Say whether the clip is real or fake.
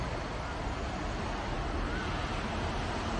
real